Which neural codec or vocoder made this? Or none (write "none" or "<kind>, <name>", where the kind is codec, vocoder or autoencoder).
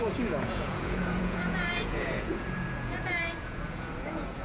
vocoder, Vocos